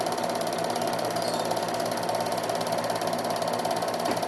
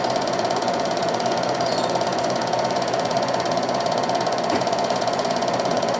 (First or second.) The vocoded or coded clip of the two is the second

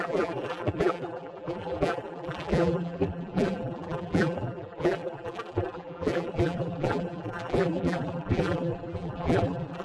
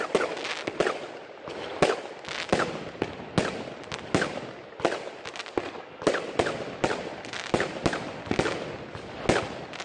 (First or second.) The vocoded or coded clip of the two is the first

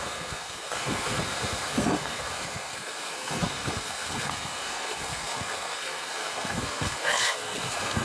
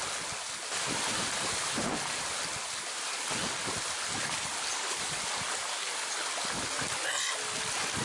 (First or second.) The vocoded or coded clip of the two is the first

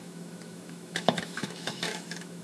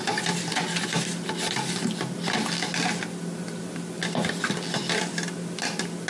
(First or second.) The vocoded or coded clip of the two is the first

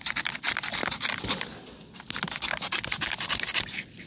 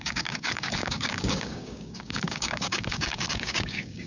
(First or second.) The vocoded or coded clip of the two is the second